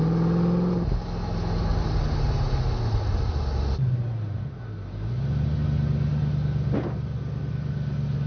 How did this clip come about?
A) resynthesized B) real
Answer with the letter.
B